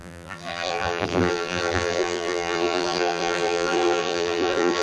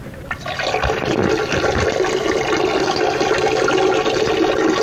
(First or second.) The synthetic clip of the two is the first